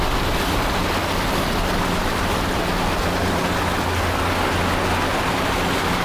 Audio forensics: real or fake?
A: real